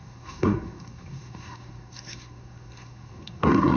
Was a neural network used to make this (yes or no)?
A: yes